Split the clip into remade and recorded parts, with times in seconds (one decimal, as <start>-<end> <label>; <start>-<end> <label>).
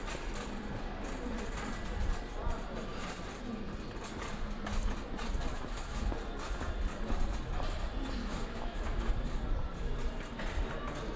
0.0-5.5 recorded; 5.5-6.1 remade; 6.1-8.2 recorded; 8.2-9.1 remade; 9.1-11.2 recorded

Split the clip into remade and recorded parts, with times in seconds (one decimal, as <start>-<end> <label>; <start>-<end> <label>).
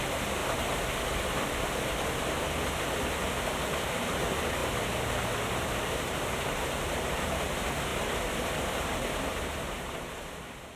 0.0-7.9 recorded; 7.9-9.4 remade; 9.4-10.8 recorded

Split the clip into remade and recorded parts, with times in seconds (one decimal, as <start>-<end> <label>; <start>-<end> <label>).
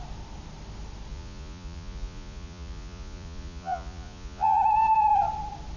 0.0-1.1 recorded; 1.1-4.6 remade; 4.6-5.8 recorded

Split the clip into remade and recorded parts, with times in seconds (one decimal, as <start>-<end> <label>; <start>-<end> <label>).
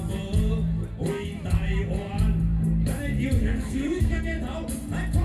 0.0-3.4 recorded; 3.4-4.2 remade; 4.2-5.2 recorded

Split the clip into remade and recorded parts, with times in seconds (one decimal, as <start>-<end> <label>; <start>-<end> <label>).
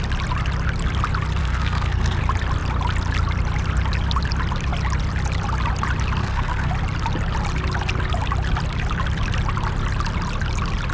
0.0-1.4 recorded; 1.4-2.2 remade; 2.2-6.2 recorded; 6.2-6.7 remade; 6.7-10.9 recorded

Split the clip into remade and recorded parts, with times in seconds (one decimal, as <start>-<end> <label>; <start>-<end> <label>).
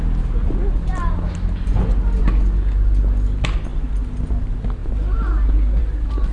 0.0-6.3 recorded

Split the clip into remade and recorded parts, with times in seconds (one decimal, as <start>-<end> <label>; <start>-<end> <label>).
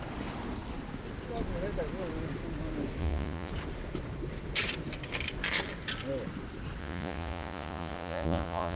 0.0-3.0 recorded; 3.0-3.5 remade; 3.5-6.8 recorded; 6.8-8.8 remade